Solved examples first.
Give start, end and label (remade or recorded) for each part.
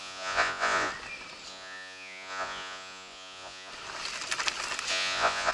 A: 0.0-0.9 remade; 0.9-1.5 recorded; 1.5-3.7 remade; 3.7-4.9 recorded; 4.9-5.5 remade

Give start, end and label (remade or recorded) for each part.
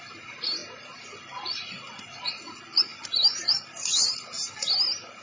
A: 0.0-5.2 recorded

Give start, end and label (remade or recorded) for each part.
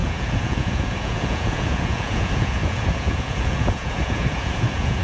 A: 0.0-5.0 remade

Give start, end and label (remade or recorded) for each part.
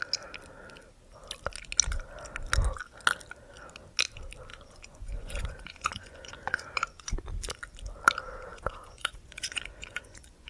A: 0.0-4.5 recorded; 4.5-7.1 remade; 7.1-8.5 recorded; 8.5-10.5 remade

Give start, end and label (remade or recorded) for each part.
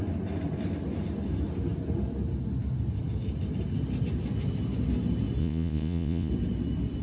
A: 0.0-5.4 recorded; 5.4-6.3 remade; 6.3-7.0 recorded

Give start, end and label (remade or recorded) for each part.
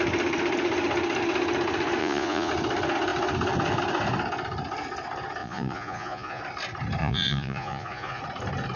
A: 0.0-2.0 recorded; 2.0-2.5 remade; 2.5-5.4 recorded; 5.4-6.4 remade; 6.4-7.0 recorded; 7.0-8.2 remade; 8.2-8.8 recorded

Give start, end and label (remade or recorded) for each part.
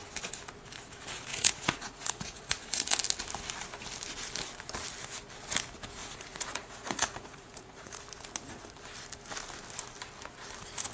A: 0.0-1.3 recorded; 1.3-2.9 remade; 2.9-6.0 recorded; 6.0-8.0 remade; 8.0-10.9 recorded